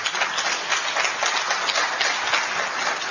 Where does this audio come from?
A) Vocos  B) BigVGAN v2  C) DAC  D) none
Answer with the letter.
D